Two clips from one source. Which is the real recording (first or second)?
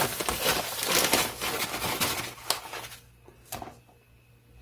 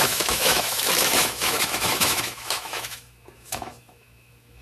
first